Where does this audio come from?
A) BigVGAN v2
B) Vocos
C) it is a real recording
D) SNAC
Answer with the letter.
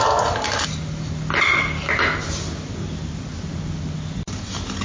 C